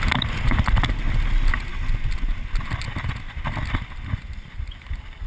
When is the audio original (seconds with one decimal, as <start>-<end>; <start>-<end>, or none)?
0.0-5.3